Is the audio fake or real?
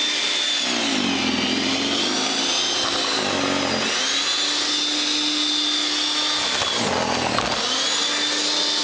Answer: real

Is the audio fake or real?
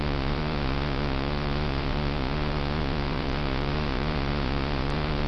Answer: fake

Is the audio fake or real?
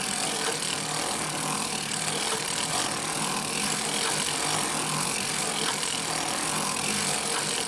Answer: real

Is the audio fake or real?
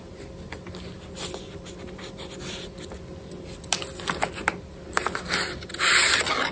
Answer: real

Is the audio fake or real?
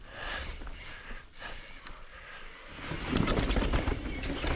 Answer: real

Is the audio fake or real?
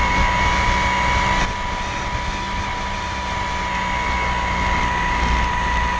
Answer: real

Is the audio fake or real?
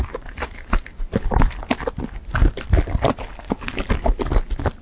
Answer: real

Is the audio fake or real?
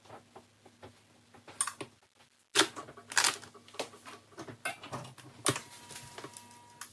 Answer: real